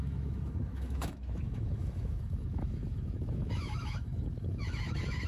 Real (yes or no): no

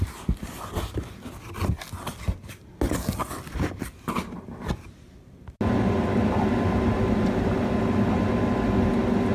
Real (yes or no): yes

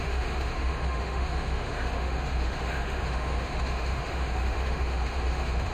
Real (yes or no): no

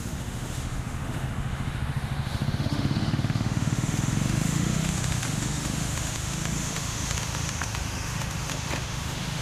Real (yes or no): no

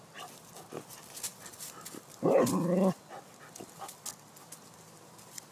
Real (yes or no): yes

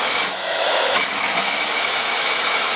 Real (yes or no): no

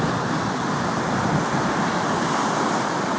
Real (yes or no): yes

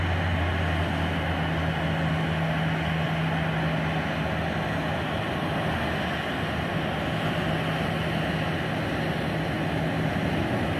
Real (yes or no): yes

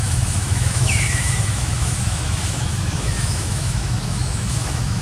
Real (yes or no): no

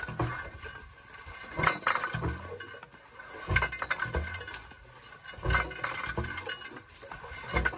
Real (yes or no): yes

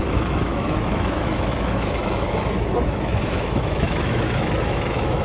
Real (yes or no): no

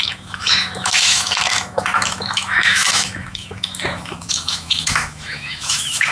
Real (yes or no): no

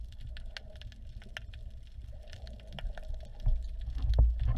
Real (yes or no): yes